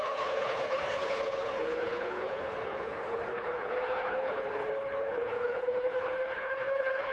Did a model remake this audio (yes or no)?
yes